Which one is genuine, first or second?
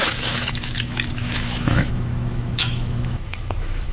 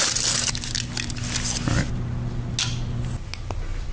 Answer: second